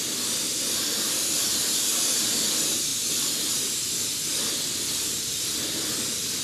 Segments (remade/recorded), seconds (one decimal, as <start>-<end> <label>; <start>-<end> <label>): 0.0-2.9 remade; 2.9-3.5 recorded; 3.5-4.1 remade; 4.1-5.9 recorded; 5.9-6.4 remade